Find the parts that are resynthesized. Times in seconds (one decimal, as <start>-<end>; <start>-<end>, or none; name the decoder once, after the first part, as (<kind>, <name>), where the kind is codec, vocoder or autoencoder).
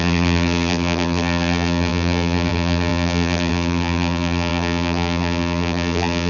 0.0-6.3 (vocoder, BigVGAN v2)